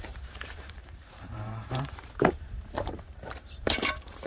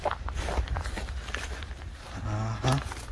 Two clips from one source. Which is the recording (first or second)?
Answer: second